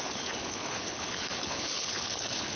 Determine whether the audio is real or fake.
fake